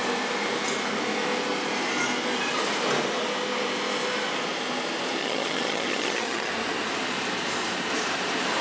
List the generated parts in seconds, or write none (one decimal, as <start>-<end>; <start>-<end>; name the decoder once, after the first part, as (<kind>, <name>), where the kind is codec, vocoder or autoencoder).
5.2-6.5 (vocoder, HiFi-GAN)